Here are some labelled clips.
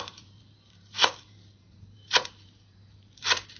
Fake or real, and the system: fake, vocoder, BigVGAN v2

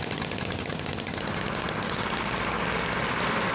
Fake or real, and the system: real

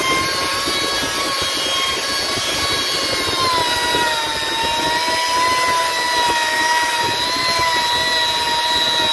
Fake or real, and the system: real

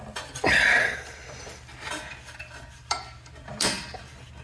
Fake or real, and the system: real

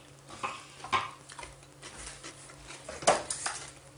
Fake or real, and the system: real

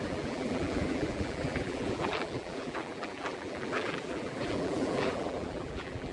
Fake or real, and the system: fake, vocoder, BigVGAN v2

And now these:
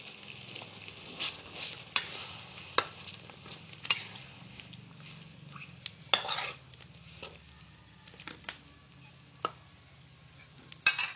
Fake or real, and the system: real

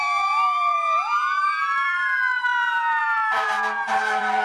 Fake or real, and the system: fake, vocoder, BigVGAN v2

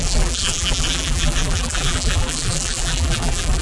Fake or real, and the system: fake, vocoder, BigVGAN v2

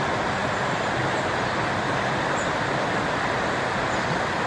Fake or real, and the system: real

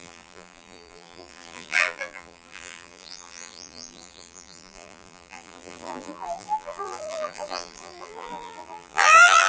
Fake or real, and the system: fake, vocoder, BigVGAN v2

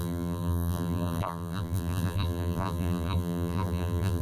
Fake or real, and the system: fake, vocoder, BigVGAN v2